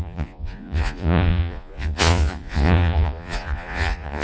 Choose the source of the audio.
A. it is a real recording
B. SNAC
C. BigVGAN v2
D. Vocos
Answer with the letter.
D